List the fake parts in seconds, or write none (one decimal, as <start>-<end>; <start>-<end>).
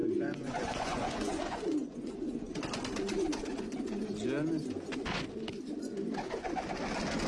0.0-2.6